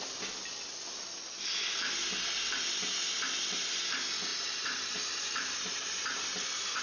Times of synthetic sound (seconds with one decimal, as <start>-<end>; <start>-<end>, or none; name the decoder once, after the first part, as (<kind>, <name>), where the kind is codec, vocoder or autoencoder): 4.3-6.8 (vocoder, BigVGAN v2)